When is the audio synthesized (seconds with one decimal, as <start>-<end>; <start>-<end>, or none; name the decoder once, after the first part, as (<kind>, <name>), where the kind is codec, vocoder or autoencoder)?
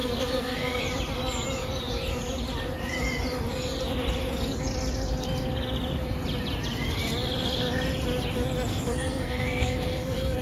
0.0-0.8 (codec, SNAC); 8.7-10.4